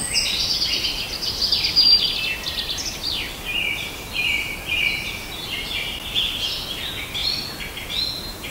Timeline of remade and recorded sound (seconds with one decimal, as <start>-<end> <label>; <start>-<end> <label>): 0.0-8.5 recorded